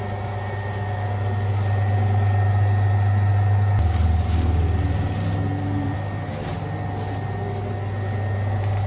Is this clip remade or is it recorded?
recorded